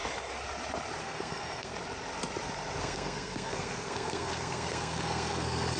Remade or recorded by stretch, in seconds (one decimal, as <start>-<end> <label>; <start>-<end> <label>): 0.0-1.0 recorded; 1.0-1.7 remade; 1.7-2.8 recorded; 2.8-5.8 remade